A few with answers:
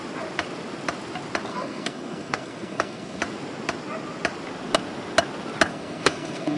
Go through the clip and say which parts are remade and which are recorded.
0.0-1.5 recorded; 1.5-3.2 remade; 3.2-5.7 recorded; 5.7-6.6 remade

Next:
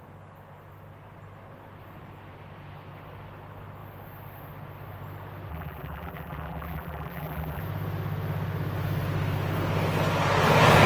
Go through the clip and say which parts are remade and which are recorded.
0.0-5.5 recorded; 5.5-7.6 remade; 7.6-10.9 recorded

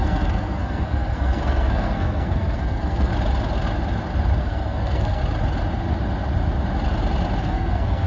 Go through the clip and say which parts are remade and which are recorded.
0.0-3.1 remade; 3.1-4.4 recorded; 4.4-5.2 remade; 5.2-7.4 recorded; 7.4-8.1 remade

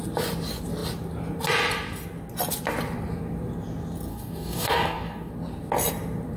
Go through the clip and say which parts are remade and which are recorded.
0.0-4.1 recorded; 4.1-5.3 remade; 5.3-6.4 recorded

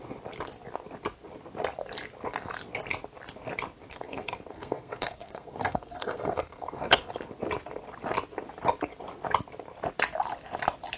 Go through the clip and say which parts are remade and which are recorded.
0.0-3.9 recorded; 3.9-7.0 remade; 7.0-11.0 recorded

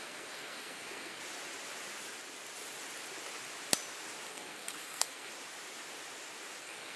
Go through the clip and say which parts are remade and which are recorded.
0.0-1.2 remade; 1.2-4.3 recorded; 4.3-5.3 remade; 5.3-6.6 recorded; 6.6-7.0 remade